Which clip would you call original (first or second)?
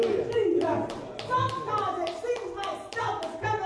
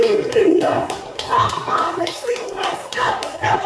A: first